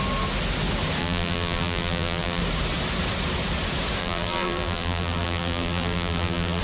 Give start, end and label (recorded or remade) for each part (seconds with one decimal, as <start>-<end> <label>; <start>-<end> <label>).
0.0-1.0 recorded; 1.0-2.4 remade; 2.4-4.0 recorded; 4.0-6.6 remade